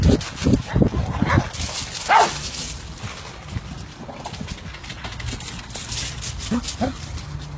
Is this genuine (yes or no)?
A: yes